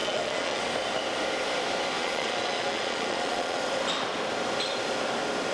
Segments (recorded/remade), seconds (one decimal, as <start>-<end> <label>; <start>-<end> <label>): 0.0-0.6 remade; 0.6-2.0 recorded; 2.0-3.6 remade; 3.6-5.5 recorded